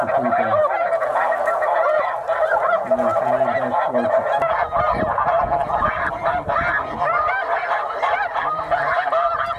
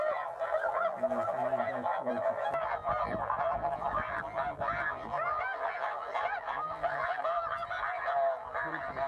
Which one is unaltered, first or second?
first